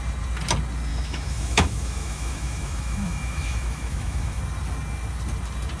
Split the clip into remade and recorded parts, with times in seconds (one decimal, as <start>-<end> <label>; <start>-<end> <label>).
0.0-0.9 recorded; 0.9-4.4 remade; 4.4-5.8 recorded

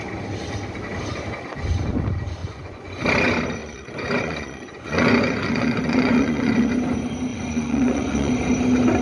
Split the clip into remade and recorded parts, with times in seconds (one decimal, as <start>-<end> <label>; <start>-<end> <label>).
0.0-2.4 recorded; 2.4-3.0 remade; 3.0-3.6 recorded; 3.6-6.7 remade; 6.7-7.3 recorded; 7.3-8.3 remade; 8.3-9.0 recorded

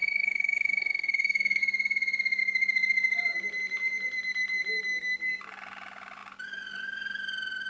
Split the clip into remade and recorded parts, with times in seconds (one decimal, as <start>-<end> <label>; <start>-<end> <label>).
0.0-1.6 remade; 1.6-7.7 recorded

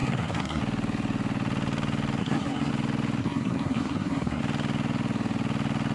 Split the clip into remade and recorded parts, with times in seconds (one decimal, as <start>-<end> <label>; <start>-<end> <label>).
0.0-0.6 remade; 0.6-2.2 recorded; 2.2-2.7 remade; 2.7-3.2 recorded; 3.2-4.4 remade; 4.4-5.9 recorded

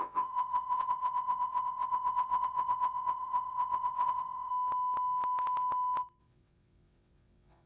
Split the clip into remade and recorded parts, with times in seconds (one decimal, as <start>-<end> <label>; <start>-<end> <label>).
0.0-4.5 remade; 4.5-6.2 recorded; 6.2-7.7 remade

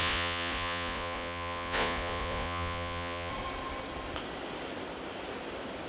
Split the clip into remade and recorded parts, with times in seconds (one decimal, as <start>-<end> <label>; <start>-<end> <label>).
0.0-3.3 remade; 3.3-5.9 recorded

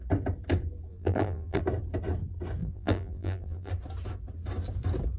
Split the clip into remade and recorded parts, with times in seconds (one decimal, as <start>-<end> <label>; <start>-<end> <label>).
0.0-0.9 recorded; 0.9-1.6 remade; 1.6-2.6 recorded; 2.6-3.7 remade; 3.7-5.2 recorded

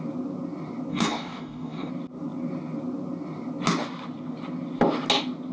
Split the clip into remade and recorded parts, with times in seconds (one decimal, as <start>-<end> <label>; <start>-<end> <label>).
0.0-0.9 recorded; 0.9-1.9 remade; 1.9-5.5 recorded